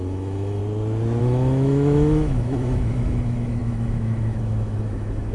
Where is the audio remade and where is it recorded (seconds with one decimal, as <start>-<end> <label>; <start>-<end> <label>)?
0.0-0.6 remade; 0.6-1.2 recorded; 1.2-5.3 remade